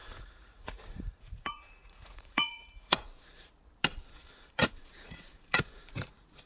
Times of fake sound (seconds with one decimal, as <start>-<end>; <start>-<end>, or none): 0.0-3.5; 4.0-6.5